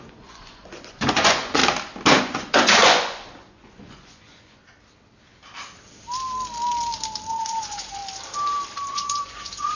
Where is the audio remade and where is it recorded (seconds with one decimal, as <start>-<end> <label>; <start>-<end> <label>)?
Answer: 0.0-1.6 remade; 1.6-2.2 recorded; 2.2-4.6 remade; 4.6-7.3 recorded; 7.3-8.0 remade; 8.0-8.9 recorded; 8.9-9.8 remade